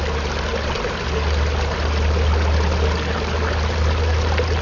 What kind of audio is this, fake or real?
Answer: real